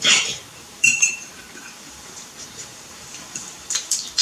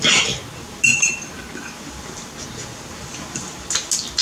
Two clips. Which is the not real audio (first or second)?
first